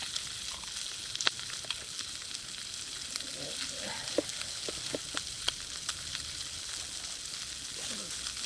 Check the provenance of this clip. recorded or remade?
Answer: recorded